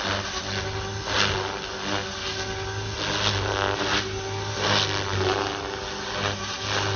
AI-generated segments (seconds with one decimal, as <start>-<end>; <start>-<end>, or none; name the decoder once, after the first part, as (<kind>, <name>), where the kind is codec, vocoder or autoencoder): none

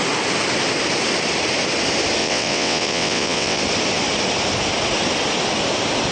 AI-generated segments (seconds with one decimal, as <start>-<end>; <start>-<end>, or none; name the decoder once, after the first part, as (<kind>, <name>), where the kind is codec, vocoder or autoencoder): 2.2-3.6 (vocoder, WaveNeXt)

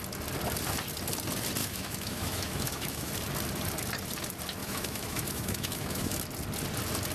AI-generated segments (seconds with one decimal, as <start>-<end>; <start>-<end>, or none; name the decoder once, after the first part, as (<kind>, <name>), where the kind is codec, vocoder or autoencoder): 1.6-3.1 (autoencoder, DAC-VAE); 4.6-6.2

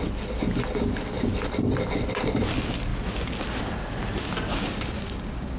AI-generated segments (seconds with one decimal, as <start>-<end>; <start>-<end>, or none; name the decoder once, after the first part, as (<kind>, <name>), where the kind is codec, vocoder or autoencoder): 4.5-5.6 (codec, DAC)

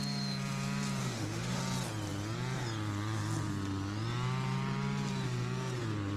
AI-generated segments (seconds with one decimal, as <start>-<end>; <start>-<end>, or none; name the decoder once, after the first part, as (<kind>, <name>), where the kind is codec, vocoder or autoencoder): 1.0-1.6 (autoencoder, DAC-VAE)